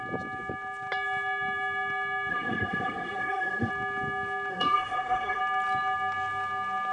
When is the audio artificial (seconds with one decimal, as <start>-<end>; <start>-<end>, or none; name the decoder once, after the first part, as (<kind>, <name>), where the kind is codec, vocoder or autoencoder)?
2.3-3.7 (codec, SNAC); 4.5-5.4